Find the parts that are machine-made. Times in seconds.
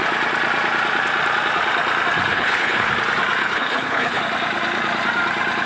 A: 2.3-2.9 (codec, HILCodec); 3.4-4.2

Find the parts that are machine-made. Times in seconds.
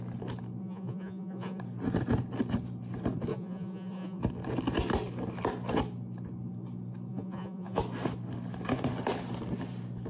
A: 0.6-1.6 (vocoder, Vocos); 3.3-4.2; 7.1-7.8